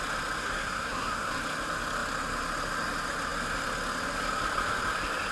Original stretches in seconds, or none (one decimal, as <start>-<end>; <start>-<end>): 0.0-0.4; 1.3-5.3